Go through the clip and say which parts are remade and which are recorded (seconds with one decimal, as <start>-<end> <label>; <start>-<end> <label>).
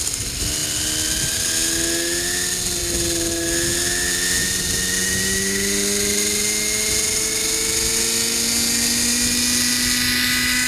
0.0-10.7 recorded